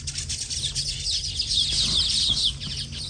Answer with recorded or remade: recorded